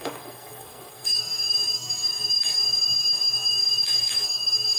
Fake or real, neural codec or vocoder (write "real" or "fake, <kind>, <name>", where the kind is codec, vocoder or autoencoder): fake, codec, SNAC